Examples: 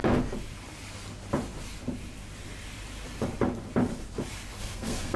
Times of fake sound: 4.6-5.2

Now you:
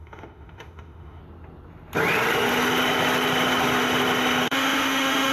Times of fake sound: 0.0-1.2; 4.4-5.3

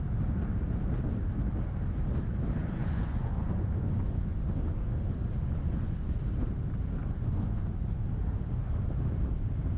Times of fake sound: 2.6-4.4; 5.4-6.2; 7.0-8.1